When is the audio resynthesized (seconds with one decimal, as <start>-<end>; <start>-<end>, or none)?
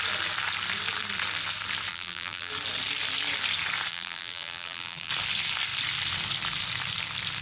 1.9-2.5; 3.9-5.1